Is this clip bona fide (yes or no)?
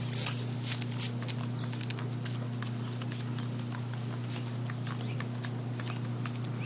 yes